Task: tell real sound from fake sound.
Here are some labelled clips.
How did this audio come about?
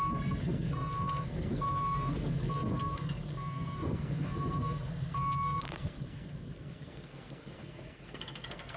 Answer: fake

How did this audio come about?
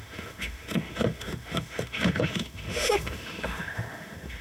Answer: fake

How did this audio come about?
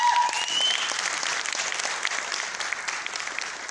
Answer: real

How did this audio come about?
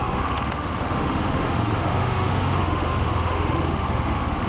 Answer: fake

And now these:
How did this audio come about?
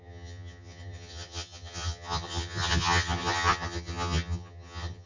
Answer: fake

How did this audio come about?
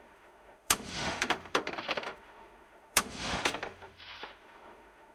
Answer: fake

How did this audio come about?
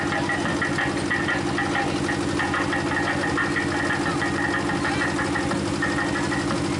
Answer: real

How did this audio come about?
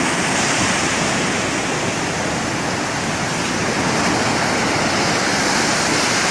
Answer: real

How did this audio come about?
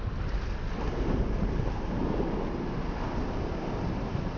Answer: real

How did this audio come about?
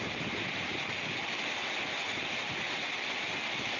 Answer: real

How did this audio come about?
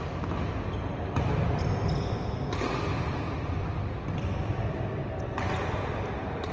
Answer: real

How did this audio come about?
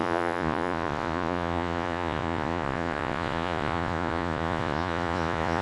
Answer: fake